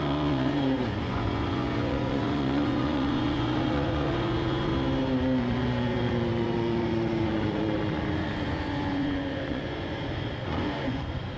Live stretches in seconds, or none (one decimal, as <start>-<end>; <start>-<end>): 4.7-5.4